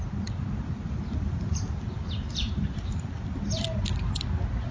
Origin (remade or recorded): recorded